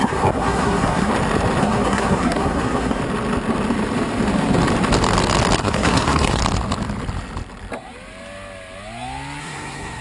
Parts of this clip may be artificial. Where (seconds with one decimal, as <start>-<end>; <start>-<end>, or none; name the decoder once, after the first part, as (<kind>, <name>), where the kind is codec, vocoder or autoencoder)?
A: 0.0-1.1 (codec, SNAC); 1.6-3.0; 5.6-6.4; 9.4-10.0